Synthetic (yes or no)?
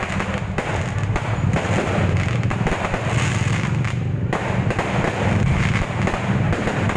no